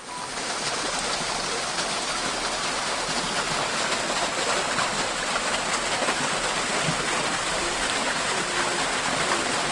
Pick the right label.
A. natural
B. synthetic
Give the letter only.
A